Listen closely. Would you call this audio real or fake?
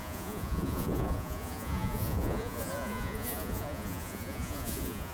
fake